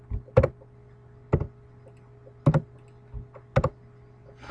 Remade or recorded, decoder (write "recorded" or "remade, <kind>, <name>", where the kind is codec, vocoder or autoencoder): recorded